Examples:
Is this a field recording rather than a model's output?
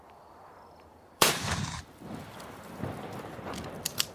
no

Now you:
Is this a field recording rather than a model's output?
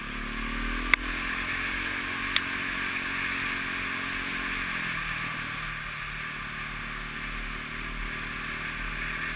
yes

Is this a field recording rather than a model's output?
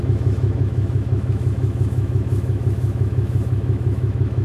no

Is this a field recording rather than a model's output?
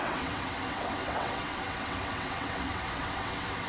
no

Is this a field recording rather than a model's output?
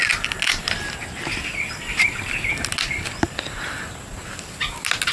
yes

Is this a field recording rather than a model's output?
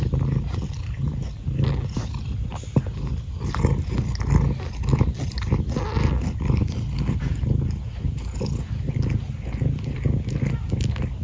yes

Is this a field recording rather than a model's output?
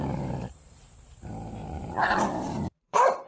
no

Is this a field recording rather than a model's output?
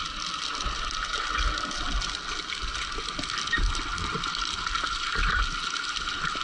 yes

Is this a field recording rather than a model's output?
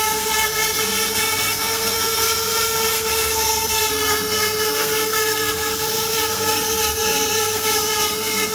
no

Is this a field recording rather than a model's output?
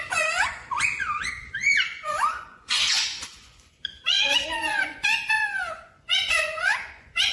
no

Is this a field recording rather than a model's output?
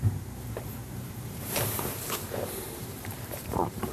no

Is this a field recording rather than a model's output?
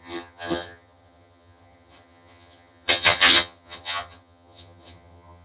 no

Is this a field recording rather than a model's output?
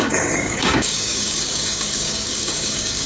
no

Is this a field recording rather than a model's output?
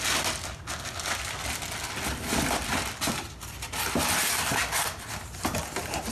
yes